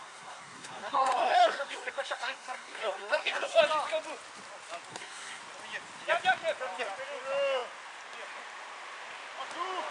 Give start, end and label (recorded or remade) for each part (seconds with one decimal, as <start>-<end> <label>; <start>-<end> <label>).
0.0-3.6 remade; 3.6-4.9 recorded; 4.9-5.4 remade; 5.4-9.9 recorded